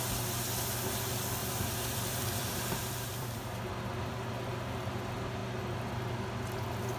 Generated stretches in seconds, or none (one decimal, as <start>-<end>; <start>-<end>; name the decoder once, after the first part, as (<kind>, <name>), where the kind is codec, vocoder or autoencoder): 1.4-3.6 (vocoder, BigVGAN v2)